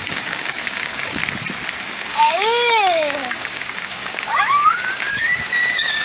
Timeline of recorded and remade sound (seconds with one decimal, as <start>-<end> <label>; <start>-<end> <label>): 0.0-1.2 remade; 1.2-1.8 recorded; 1.8-6.0 remade